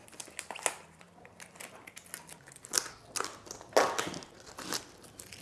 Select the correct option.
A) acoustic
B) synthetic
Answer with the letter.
A